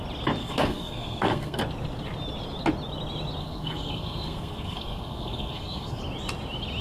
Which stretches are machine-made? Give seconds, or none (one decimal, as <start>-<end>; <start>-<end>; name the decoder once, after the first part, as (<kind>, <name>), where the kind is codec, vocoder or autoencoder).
0.4-1.6 (codec, SNAC); 3.4-6.0